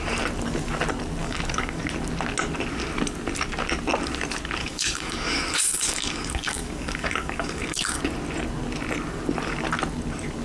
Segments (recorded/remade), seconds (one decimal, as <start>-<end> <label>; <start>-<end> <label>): 0.0-1.2 recorded; 1.2-1.8 remade; 1.8-4.6 recorded; 4.6-8.0 remade; 8.0-10.4 recorded